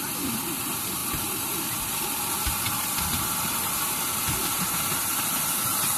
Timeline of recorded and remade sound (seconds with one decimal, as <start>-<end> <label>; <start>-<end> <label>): 0.0-6.0 recorded